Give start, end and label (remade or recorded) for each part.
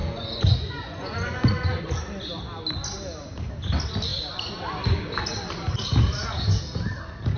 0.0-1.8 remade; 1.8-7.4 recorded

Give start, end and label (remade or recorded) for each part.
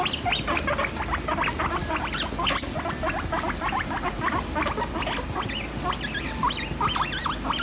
0.0-7.6 recorded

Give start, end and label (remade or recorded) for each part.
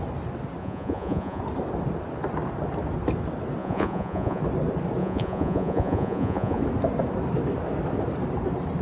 0.0-0.6 recorded; 0.6-1.4 remade; 1.4-3.6 recorded; 3.6-4.4 remade; 4.4-5.0 recorded; 5.0-6.6 remade; 6.6-8.8 recorded